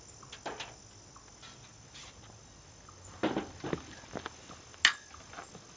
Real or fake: real